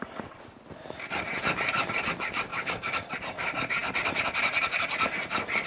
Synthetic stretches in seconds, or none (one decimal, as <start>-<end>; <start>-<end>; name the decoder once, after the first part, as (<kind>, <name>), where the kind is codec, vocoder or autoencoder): 2.5-3.1 (codec, DAC)